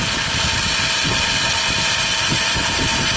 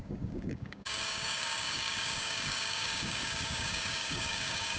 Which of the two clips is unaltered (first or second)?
first